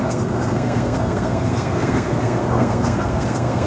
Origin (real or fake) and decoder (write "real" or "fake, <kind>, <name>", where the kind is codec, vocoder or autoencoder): fake, codec, SNAC